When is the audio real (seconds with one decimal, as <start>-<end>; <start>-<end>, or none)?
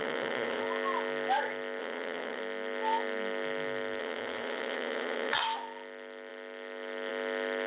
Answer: 0.6-1.8; 2.4-4.0; 5.4-7.7